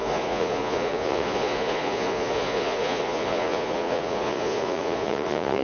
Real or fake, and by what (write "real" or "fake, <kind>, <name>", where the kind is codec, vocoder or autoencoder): fake, vocoder, Vocos